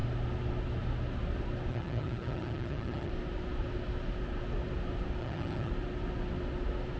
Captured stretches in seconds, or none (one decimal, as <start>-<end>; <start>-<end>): 0.0-1.7; 3.1-5.2; 5.7-7.0